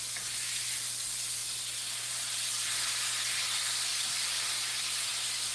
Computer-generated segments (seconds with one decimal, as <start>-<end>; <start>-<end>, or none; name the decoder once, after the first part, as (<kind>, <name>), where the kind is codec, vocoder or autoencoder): none